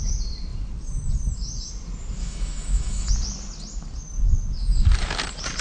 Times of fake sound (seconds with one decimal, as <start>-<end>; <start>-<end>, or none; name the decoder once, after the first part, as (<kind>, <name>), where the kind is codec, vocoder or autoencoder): 2.2-3.1 (autoencoder, DAC-VAE)